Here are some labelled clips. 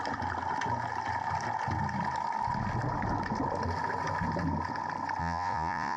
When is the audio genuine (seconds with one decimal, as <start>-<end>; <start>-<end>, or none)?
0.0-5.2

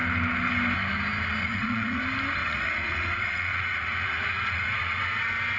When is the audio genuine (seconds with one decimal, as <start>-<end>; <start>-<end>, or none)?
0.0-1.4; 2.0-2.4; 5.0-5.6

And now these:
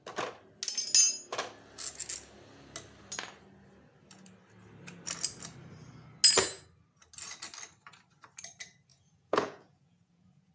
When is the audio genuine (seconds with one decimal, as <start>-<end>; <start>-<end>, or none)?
0.0-8.9

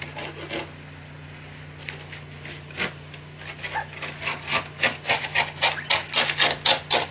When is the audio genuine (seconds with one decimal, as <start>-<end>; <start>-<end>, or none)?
0.0-7.1